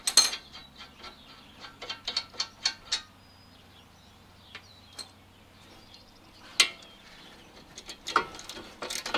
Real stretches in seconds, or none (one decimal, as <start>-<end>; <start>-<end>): 0.0-0.6; 4.8-9.2